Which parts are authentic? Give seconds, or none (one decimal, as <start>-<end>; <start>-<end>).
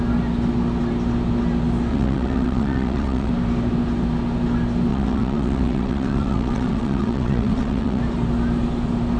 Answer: 0.0-1.9; 3.3-4.9; 8.0-9.2